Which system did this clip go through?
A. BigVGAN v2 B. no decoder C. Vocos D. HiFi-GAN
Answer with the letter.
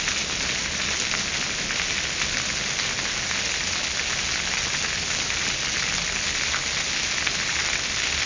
B